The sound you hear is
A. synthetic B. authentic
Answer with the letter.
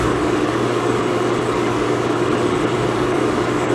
A